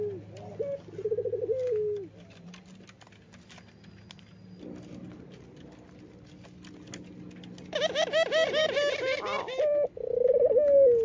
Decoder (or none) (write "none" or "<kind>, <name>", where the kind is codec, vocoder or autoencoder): none